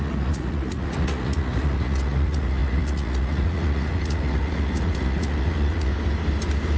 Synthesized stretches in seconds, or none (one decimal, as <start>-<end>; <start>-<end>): 0.0-5.9